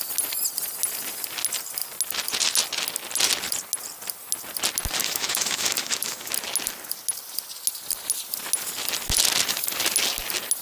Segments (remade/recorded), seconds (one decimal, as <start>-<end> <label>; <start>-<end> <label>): 0.0-5.0 recorded; 5.0-6.3 remade; 6.3-10.6 recorded